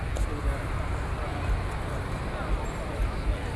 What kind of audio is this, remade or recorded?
recorded